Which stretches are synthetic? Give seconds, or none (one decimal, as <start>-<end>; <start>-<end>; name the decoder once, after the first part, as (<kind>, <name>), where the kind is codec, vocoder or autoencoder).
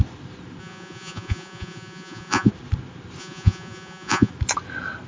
0.6-2.5 (vocoder, Vocos); 3.2-4.3